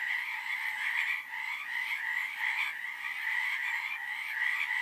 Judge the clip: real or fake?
real